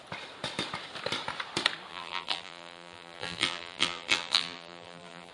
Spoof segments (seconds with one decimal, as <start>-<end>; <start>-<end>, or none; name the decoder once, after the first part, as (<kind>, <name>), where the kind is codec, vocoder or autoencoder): 1.9-5.3 (vocoder, BigVGAN v2)